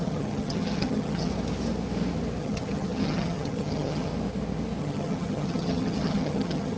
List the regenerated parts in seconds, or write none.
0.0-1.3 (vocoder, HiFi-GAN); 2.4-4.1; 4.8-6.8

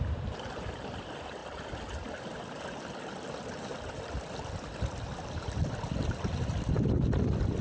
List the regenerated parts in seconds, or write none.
none

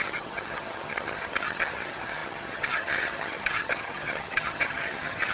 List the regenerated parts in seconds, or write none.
0.0-5.3 (vocoder, HiFi-GAN)

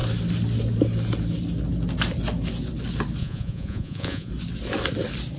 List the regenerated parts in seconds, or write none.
3.2-4.3 (vocoder, Vocos)

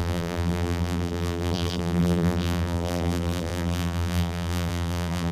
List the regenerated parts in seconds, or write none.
0.0-5.3 (vocoder, BigVGAN v2)

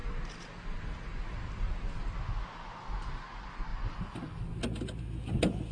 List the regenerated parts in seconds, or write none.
0.0-1.7 (vocoder, BigVGAN v2); 3.7-4.4